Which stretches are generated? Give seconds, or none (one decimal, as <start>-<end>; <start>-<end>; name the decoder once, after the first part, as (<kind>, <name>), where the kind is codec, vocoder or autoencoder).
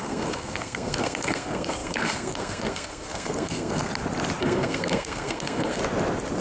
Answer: 0.0-3.9 (codec, SNAC); 4.4-5.8